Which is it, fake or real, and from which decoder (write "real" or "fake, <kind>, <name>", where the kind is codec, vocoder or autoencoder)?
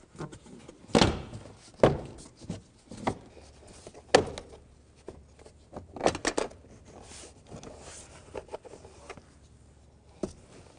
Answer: real